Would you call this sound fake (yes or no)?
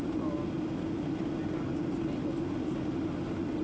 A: no